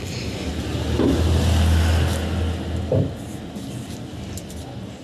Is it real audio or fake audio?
real